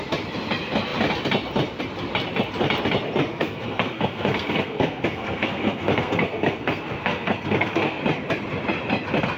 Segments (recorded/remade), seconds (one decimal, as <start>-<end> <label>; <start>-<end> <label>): 0.0-3.3 recorded; 3.3-8.0 remade; 8.0-9.4 recorded